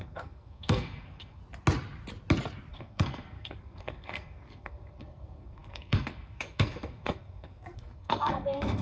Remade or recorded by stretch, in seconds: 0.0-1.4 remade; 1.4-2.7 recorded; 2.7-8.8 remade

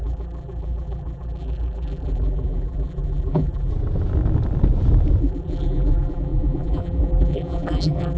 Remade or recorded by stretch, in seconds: 0.0-3.7 remade; 3.7-5.2 recorded; 5.2-8.2 remade

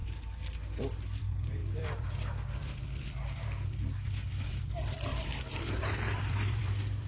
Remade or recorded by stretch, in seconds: 0.0-1.2 recorded; 1.2-7.1 remade

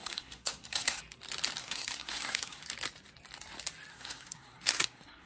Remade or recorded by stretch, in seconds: 0.0-1.0 remade; 1.0-1.6 recorded; 1.6-2.6 remade; 2.6-3.9 recorded; 3.9-5.3 remade

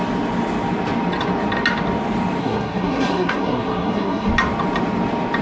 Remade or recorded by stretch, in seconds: 0.0-2.4 recorded; 2.4-4.3 remade; 4.3-5.4 recorded

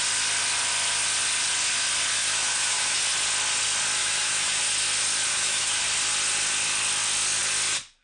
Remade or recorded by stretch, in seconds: 0.0-2.2 recorded; 2.2-3.0 remade; 3.0-4.0 recorded; 4.0-4.6 remade; 4.6-5.3 recorded; 5.3-5.8 remade; 5.8-8.0 recorded